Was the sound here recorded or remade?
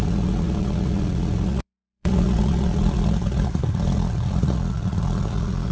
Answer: remade